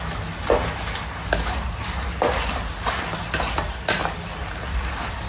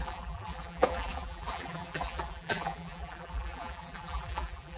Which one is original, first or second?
first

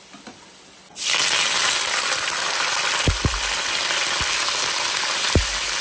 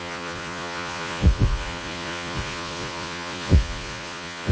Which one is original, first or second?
first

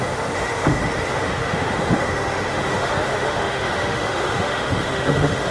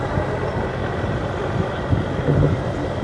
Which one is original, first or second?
second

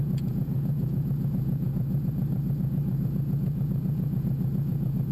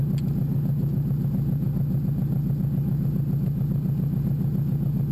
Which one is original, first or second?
second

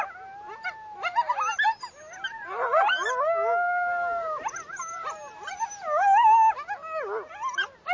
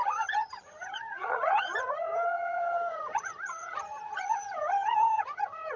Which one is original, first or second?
first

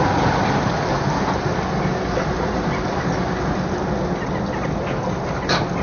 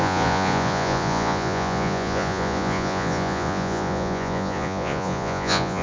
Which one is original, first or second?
first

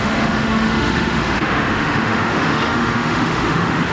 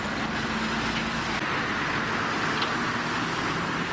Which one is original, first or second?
second